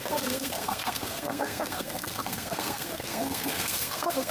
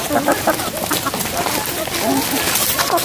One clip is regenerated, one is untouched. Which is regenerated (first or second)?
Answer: first